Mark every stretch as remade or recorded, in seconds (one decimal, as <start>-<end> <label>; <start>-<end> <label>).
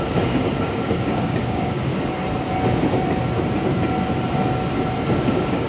0.0-1.9 remade; 1.9-5.3 recorded; 5.3-5.7 remade